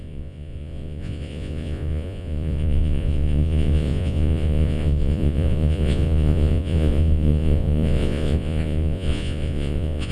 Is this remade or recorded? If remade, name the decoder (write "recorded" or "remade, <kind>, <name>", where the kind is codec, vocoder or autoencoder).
remade, vocoder, Vocos